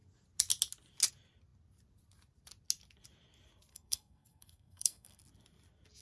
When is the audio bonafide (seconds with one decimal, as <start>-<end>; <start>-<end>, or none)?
0.0-3.7; 5.2-6.0